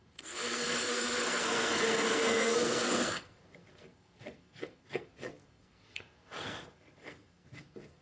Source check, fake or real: fake